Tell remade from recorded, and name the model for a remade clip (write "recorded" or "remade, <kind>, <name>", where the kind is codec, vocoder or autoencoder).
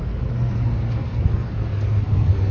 remade, codec, SNAC